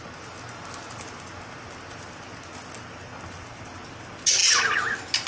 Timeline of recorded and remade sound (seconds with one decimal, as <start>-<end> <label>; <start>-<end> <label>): 0.0-5.3 recorded